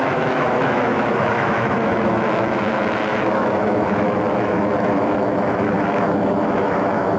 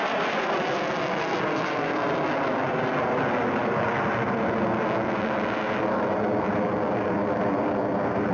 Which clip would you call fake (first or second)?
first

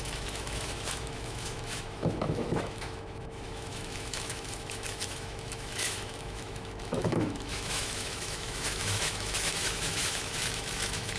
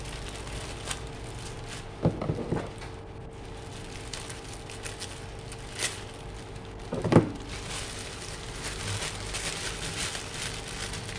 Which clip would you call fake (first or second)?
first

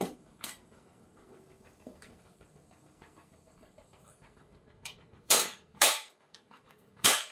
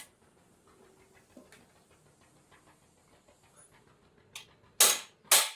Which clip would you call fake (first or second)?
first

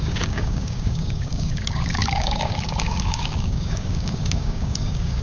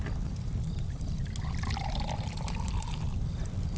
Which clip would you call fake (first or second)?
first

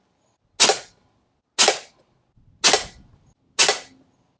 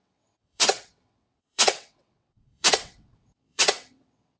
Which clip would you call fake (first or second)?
second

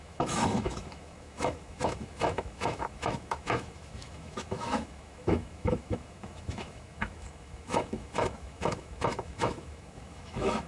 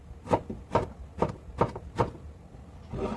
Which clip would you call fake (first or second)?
first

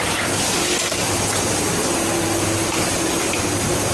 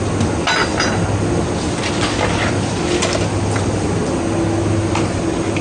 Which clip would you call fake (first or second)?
first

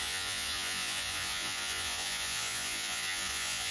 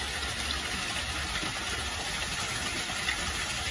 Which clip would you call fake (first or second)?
first